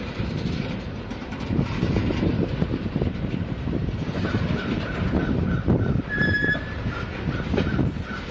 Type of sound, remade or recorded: remade